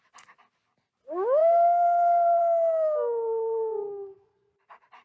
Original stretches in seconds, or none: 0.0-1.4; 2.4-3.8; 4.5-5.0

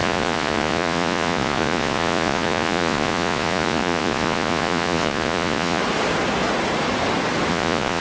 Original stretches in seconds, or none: 5.8-7.5

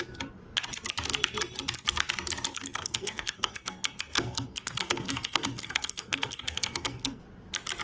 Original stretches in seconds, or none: 0.0-2.5; 7.2-7.8

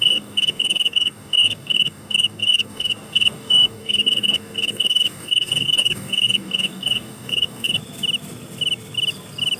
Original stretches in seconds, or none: 7.8-9.6

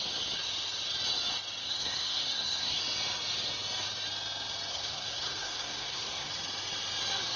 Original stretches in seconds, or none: 0.0-1.6; 2.8-4.7; 6.3-7.4

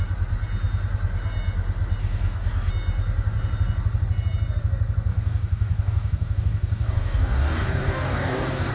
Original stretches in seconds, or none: 0.0-2.0; 2.7-5.1